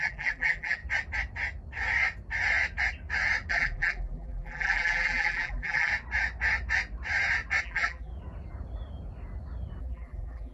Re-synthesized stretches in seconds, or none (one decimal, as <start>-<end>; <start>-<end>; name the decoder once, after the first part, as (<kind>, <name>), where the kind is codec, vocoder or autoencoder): 0.0-0.8 (vocoder, BigVGAN v2); 3.5-5.9; 7.6-8.1; 9.8-10.5